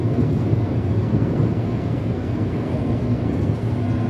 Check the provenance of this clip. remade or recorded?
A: remade